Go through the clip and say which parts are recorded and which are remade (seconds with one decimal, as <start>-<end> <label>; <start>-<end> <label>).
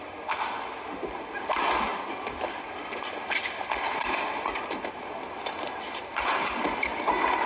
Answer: 0.0-7.5 recorded